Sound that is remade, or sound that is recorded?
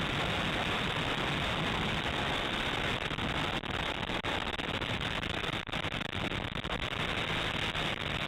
recorded